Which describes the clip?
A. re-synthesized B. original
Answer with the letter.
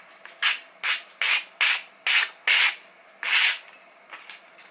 B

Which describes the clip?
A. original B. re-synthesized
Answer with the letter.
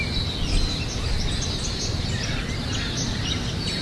A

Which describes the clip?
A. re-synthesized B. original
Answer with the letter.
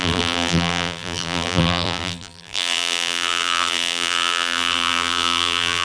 A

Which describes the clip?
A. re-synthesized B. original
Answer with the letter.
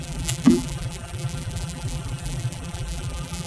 A